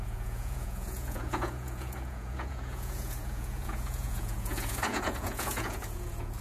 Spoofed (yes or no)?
yes